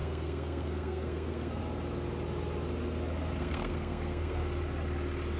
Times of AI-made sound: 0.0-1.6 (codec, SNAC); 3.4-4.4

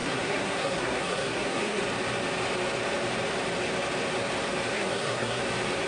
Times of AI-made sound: 0.0-1.8 (codec, SNAC); 4.7-5.4

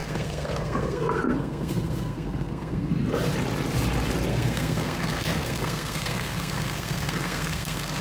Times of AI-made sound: 0.0-2.9 (codec, SNAC); 4.3-8.0

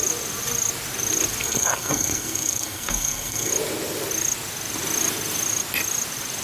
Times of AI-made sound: 1.4-3.5 (codec, SNAC)

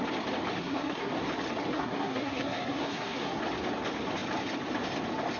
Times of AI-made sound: 0.6-1.1 (codec, SNAC); 1.7-3.4

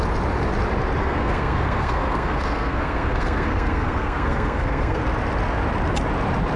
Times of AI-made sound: 1.0-5.0 (codec, SNAC)

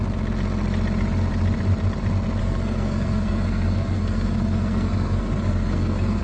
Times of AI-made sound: 2.4-6.2 (codec, SNAC)